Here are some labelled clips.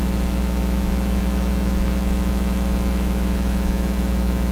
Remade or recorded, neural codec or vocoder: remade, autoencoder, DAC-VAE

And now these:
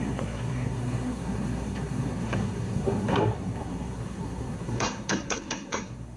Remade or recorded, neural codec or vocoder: remade, codec, SNAC